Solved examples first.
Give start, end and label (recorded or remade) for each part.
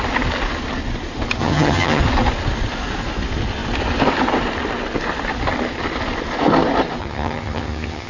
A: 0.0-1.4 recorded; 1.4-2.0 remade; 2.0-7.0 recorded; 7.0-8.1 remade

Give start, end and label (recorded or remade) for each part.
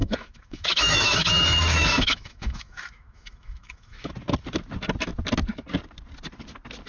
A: 0.0-4.1 remade; 4.1-6.9 recorded